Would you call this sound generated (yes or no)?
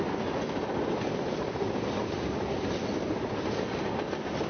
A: no